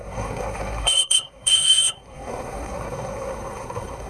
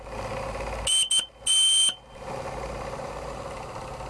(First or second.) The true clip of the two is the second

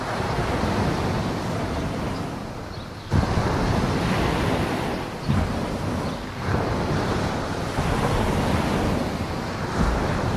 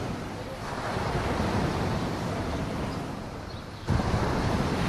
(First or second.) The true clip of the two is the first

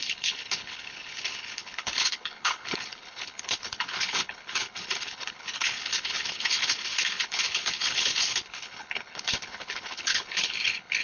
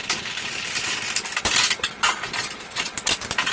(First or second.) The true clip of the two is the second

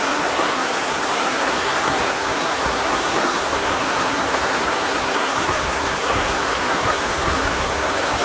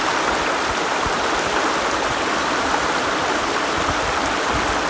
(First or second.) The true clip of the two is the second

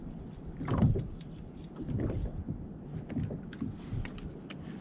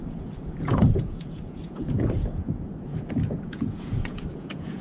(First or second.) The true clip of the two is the first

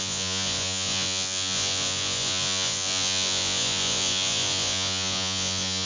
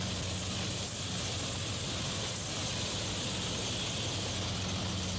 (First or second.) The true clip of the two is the second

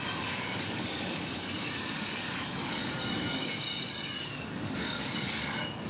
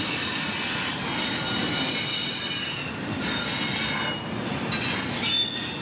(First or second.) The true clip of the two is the second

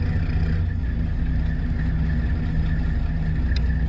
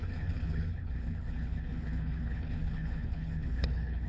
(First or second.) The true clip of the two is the first